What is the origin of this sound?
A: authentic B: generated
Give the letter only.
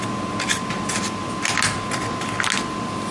A